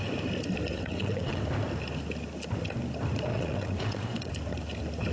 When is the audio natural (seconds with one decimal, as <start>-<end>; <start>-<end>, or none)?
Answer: 0.0-0.7; 1.4-3.3; 4.3-5.1